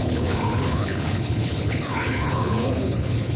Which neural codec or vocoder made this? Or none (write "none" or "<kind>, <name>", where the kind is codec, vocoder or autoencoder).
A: codec, HILCodec